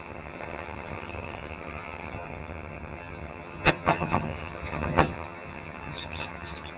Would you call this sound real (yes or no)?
no